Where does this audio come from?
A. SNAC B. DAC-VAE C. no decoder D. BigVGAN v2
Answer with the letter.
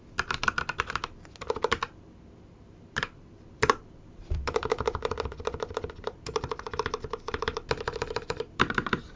D